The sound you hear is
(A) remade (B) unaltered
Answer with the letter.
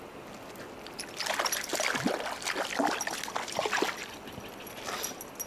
B